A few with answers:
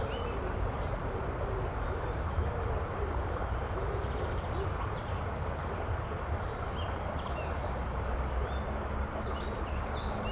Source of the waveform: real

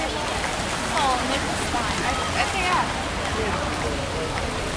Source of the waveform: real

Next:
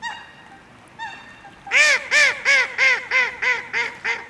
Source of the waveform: real